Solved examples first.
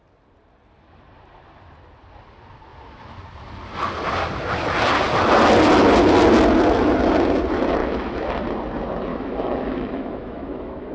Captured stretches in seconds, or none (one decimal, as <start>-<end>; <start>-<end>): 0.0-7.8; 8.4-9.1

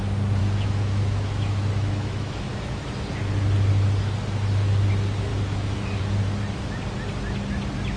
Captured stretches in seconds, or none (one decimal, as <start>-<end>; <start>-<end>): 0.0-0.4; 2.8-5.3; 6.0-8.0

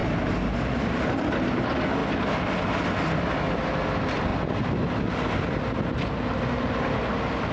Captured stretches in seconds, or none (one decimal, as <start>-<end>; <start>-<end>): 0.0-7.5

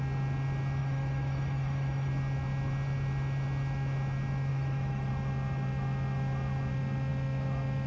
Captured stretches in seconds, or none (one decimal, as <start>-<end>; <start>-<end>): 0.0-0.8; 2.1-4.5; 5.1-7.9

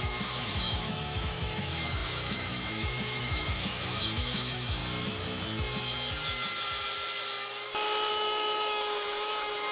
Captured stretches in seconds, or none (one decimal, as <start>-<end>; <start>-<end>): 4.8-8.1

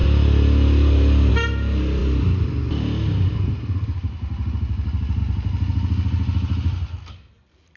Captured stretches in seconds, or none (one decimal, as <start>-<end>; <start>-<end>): 0.0-7.8

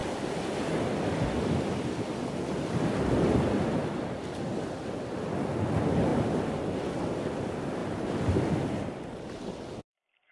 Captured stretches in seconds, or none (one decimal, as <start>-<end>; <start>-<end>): 0.0-10.3

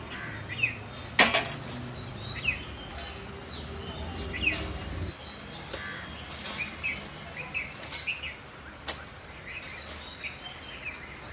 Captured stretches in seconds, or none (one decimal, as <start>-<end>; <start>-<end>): 0.0-11.3